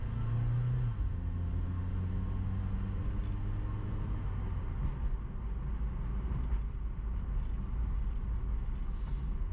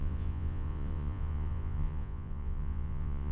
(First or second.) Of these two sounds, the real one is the first